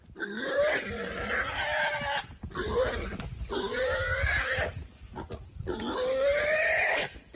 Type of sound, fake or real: real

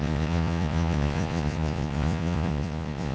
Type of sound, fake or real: fake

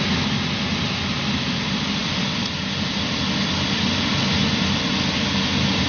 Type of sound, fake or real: real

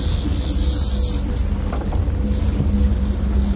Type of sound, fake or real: real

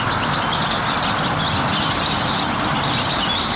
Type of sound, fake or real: real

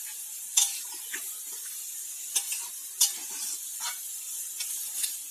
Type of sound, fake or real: real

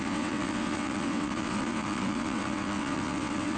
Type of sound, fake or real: fake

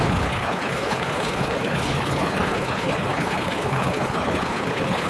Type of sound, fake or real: fake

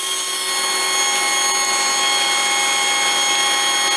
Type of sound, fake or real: real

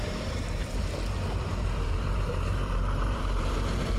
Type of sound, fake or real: fake